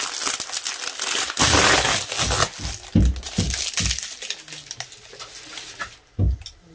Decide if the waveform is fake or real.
real